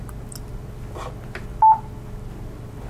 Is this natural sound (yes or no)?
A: yes